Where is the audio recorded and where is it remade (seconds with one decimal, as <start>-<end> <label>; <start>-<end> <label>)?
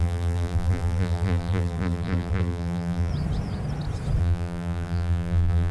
0.0-3.1 remade; 3.1-4.2 recorded; 4.2-5.7 remade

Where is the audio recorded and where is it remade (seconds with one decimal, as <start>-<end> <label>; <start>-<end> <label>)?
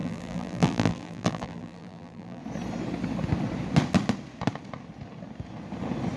0.0-2.4 remade; 2.4-6.2 recorded